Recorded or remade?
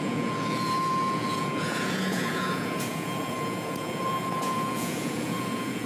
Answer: remade